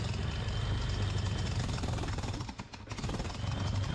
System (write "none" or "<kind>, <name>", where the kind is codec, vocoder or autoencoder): none